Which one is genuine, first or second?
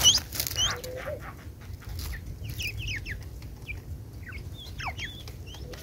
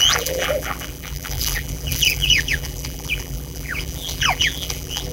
first